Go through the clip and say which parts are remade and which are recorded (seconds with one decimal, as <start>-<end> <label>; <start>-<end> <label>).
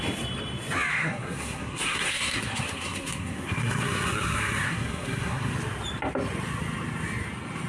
0.0-0.9 recorded; 0.9-5.5 remade; 5.5-7.7 recorded